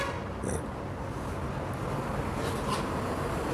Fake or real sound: real